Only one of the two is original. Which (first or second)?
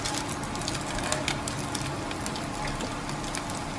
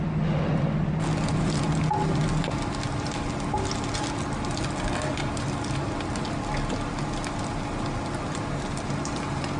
second